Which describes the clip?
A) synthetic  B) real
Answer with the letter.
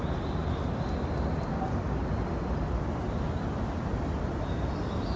B